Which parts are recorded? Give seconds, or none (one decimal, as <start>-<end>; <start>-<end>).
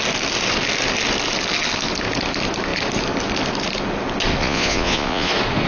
0.0-4.4; 5.3-5.7